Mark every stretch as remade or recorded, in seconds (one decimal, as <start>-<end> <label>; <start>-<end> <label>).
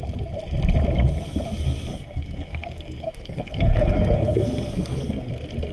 0.0-1.9 recorded; 1.9-5.3 remade; 5.3-5.7 recorded